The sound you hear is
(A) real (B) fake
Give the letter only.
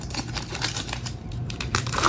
B